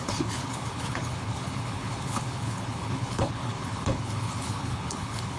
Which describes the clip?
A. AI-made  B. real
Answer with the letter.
A